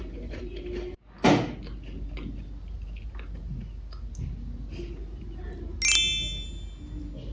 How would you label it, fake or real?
real